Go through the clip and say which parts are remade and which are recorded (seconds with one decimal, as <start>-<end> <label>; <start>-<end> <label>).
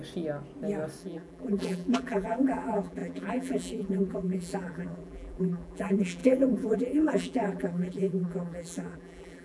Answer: 0.0-1.0 recorded; 1.0-9.4 remade